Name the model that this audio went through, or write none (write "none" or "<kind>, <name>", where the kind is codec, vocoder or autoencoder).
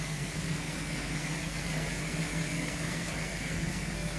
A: codec, SNAC